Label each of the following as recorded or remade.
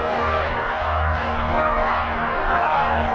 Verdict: remade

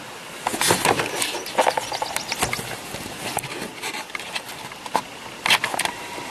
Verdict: recorded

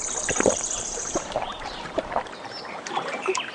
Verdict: remade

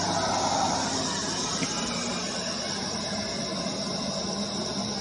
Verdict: recorded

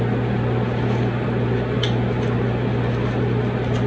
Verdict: recorded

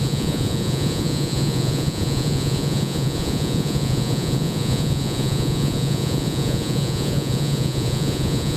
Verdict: remade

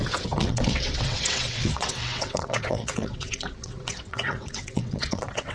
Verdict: remade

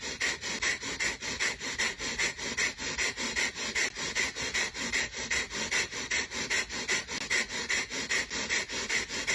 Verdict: recorded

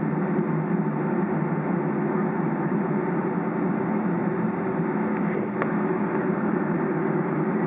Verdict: recorded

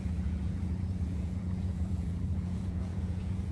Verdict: remade